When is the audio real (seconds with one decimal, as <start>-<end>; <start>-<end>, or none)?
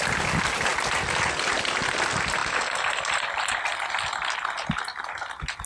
0.0-5.7